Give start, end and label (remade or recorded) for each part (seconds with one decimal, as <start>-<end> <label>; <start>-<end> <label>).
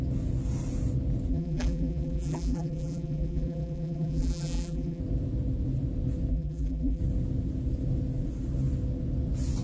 0.0-1.3 recorded; 1.3-5.0 remade; 5.0-6.3 recorded; 6.3-7.0 remade; 7.0-9.6 recorded